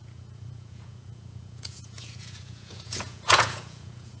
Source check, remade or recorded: remade